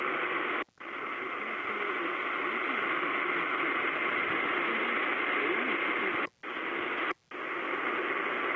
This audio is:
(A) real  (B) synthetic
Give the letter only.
A